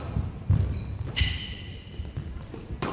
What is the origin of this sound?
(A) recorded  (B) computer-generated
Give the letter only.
A